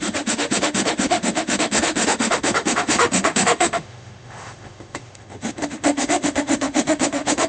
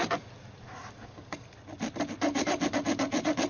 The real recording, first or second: second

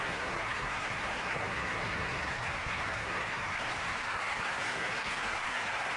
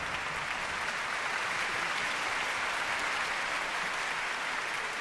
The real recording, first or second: second